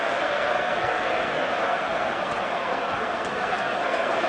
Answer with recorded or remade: remade